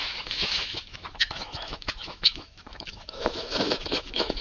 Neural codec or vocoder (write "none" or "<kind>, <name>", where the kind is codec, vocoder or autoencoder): autoencoder, DAC-VAE